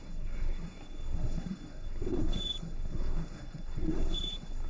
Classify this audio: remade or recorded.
remade